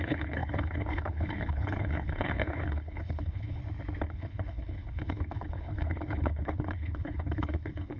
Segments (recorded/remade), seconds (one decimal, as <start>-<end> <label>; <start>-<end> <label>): 0.0-3.6 remade; 3.6-4.1 recorded; 4.1-8.0 remade